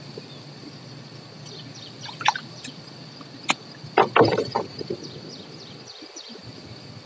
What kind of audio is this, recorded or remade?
recorded